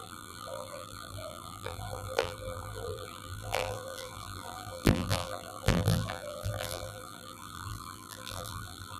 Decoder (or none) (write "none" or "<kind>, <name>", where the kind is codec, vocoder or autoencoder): vocoder, BigVGAN v2